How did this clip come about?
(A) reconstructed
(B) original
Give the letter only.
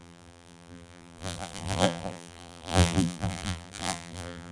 A